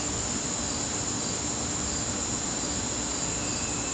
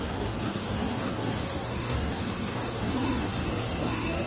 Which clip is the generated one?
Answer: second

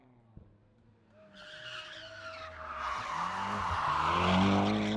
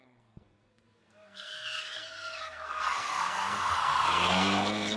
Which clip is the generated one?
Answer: second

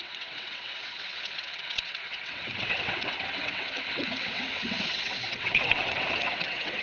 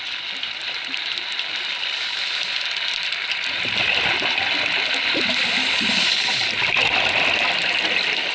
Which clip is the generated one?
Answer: first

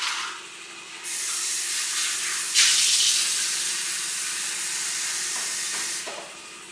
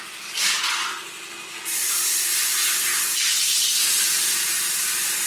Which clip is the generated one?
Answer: first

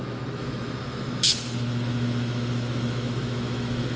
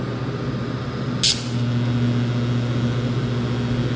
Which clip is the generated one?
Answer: first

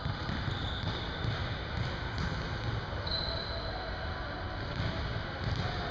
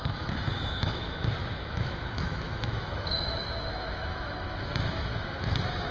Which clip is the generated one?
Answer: second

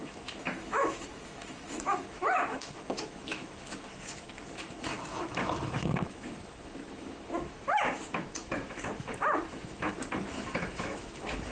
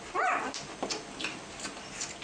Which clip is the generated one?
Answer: first